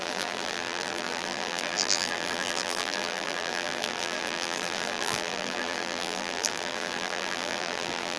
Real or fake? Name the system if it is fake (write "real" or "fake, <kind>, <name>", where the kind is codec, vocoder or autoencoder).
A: fake, vocoder, BigVGAN v2